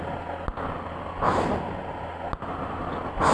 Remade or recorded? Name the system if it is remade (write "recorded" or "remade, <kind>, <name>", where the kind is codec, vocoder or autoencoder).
recorded